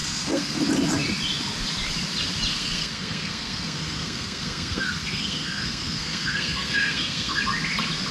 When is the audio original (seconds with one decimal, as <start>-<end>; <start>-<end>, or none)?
0.6-2.5; 7.4-8.1

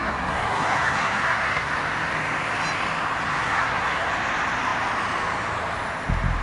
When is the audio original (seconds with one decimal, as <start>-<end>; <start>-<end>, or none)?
1.7-3.4; 4.1-6.4

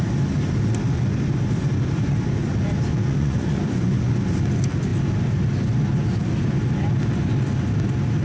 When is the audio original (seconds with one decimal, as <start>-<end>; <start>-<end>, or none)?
0.0-2.9; 4.1-8.2

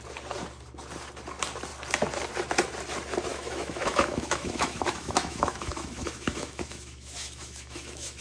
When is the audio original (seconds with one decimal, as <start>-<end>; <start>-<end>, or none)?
0.0-3.3

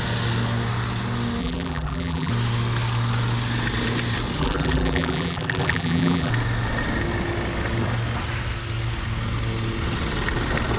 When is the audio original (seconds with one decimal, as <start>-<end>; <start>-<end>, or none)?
0.0-1.4; 2.3-4.4; 6.3-10.8

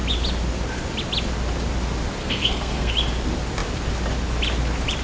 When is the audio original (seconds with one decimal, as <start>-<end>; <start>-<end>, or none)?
0.0-2.2; 2.9-5.0

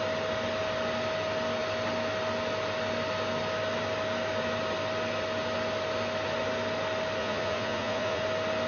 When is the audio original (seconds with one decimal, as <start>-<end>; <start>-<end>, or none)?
0.0-7.2; 8.2-8.7

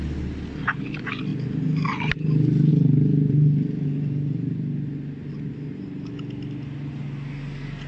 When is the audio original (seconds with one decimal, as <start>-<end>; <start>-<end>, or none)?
0.0-7.9